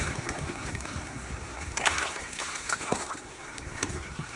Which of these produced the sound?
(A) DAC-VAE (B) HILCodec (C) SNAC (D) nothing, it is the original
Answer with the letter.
C